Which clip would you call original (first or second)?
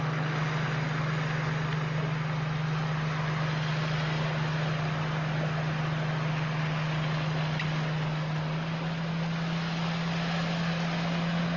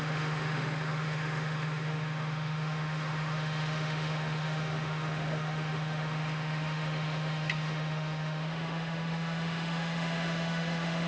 first